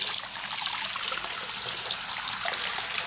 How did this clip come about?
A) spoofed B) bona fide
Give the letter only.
B